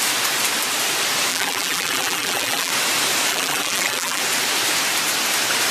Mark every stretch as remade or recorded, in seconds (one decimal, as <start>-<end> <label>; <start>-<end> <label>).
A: 0.0-1.3 recorded; 1.3-2.7 remade; 2.7-3.3 recorded; 3.3-4.2 remade; 4.2-5.7 recorded